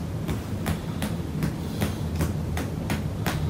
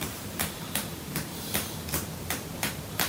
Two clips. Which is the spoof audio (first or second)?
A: second